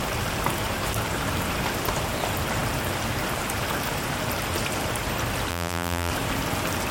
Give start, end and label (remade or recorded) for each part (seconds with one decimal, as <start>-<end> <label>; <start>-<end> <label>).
0.0-5.5 recorded; 5.5-6.1 remade; 6.1-6.9 recorded